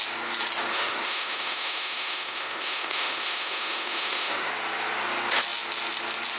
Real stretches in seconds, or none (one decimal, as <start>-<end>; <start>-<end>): 0.0-0.7; 4.5-6.4